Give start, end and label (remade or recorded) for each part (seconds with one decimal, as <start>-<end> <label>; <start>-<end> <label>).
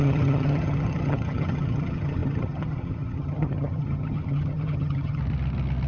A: 0.0-5.2 remade; 5.2-5.9 recorded